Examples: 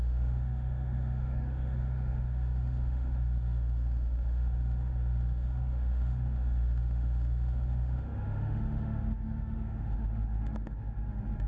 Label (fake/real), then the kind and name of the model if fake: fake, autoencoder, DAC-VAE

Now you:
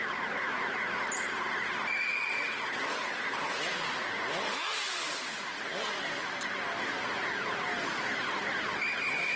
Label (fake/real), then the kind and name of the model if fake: real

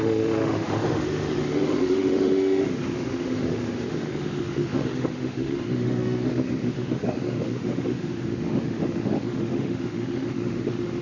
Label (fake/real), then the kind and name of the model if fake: fake, autoencoder, DAC-VAE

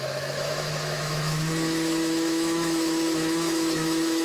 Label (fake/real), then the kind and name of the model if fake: fake, autoencoder, DAC-VAE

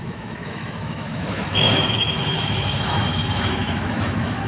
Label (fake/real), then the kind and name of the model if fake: fake, autoencoder, DAC-VAE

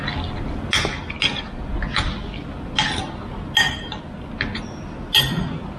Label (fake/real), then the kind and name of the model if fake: real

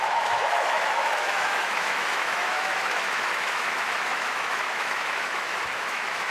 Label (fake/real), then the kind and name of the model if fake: fake, autoencoder, DAC-VAE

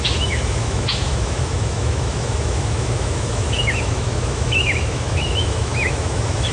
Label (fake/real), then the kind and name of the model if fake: fake, autoencoder, DAC-VAE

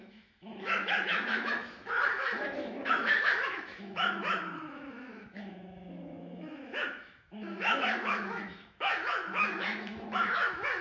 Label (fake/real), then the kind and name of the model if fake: fake, autoencoder, DAC-VAE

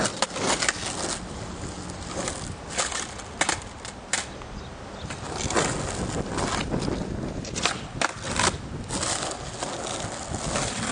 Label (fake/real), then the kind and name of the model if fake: real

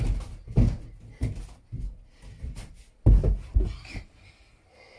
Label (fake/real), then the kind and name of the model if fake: real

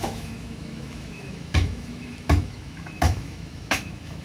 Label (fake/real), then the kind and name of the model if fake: fake, autoencoder, DAC-VAE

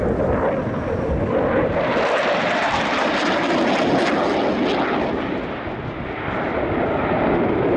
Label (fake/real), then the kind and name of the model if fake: real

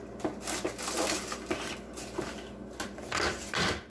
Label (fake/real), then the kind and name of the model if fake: real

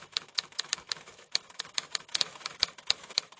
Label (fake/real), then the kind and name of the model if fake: fake, autoencoder, DAC-VAE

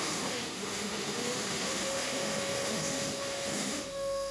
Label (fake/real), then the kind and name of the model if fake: fake, autoencoder, DAC-VAE